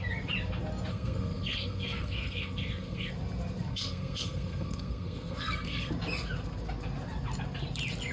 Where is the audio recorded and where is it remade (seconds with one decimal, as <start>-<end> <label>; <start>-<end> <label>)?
0.0-0.9 recorded; 0.9-3.1 remade; 3.1-3.7 recorded; 3.7-5.9 remade; 5.9-8.1 recorded